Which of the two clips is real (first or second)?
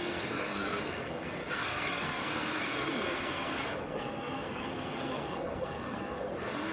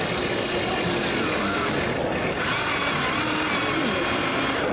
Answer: second